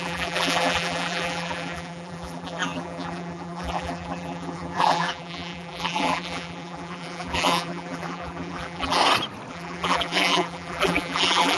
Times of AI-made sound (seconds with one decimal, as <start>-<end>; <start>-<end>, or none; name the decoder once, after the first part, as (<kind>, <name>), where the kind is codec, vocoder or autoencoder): 0.0-9.0 (vocoder, BigVGAN v2); 9.5-11.6